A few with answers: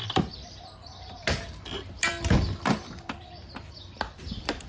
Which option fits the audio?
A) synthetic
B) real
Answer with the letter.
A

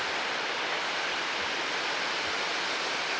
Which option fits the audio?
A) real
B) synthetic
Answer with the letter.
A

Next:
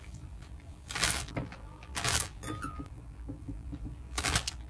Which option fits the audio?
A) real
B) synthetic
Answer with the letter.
B